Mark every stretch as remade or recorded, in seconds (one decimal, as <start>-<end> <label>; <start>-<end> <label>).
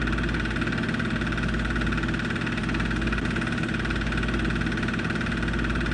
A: 0.0-5.9 recorded